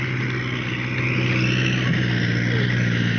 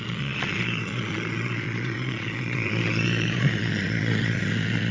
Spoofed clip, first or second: second